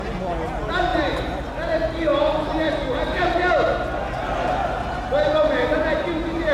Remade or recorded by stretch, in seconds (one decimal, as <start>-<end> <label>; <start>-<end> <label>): 0.0-0.9 recorded; 0.9-1.5 remade; 1.5-6.5 recorded